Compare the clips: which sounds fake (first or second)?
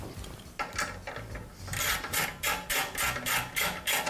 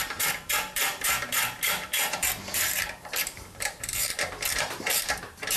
second